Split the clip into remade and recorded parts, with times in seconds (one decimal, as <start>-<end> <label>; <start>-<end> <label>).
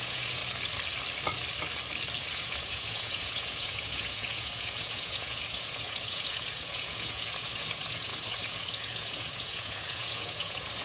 0.0-0.4 remade; 0.4-2.3 recorded; 2.3-10.8 remade